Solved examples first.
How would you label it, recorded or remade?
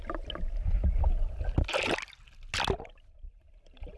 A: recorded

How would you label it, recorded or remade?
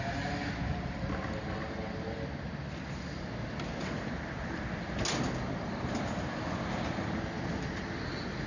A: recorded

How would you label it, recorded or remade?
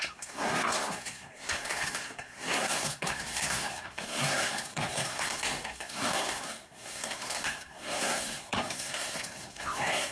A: remade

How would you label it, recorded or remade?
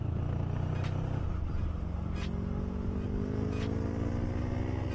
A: recorded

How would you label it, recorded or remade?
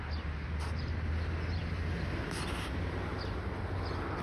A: recorded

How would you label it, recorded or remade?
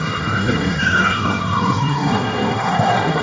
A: remade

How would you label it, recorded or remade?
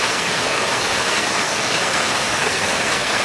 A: remade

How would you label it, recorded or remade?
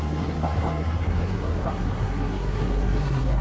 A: remade